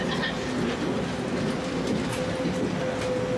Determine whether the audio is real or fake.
real